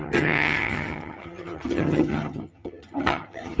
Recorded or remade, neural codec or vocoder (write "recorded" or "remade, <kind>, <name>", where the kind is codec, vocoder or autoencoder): remade, vocoder, HiFi-GAN